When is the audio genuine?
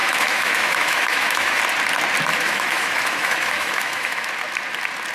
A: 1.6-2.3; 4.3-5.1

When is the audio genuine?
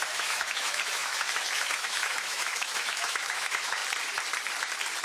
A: 3.8-5.0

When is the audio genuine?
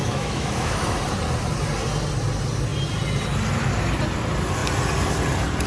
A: 1.0-5.7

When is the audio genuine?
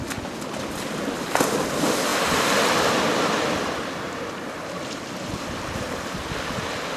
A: 0.0-7.0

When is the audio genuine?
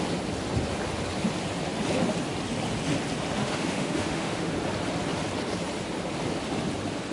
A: 0.0-3.4; 4.5-7.1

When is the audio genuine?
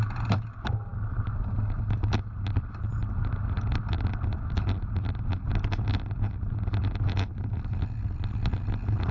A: 0.0-9.1